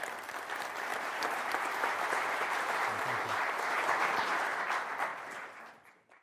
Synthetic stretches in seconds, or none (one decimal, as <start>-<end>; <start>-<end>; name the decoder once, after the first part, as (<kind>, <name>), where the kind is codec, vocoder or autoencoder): 0.9-4.6 (vocoder, BigVGAN v2); 5.1-5.6